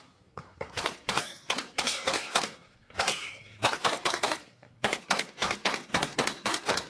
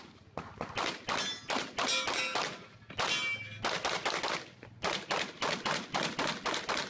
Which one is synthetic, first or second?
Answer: first